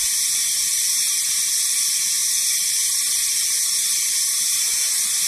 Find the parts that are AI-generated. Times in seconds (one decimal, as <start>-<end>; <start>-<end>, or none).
none